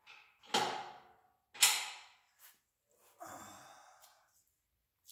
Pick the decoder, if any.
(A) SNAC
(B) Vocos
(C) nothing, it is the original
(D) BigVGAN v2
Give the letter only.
C